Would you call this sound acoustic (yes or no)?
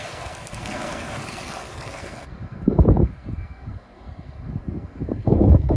no